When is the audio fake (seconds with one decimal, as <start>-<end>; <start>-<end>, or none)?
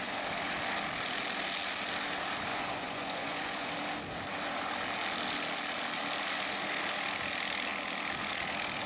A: 2.5-3.7